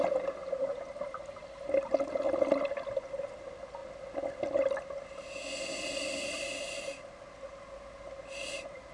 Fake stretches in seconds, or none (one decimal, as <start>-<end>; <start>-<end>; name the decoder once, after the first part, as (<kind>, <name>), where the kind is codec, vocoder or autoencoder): none